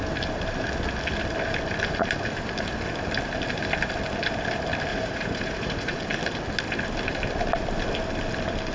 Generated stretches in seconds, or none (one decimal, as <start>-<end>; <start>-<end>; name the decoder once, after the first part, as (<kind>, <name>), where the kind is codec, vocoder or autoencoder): 4.9-6.0 (vocoder, Vocos)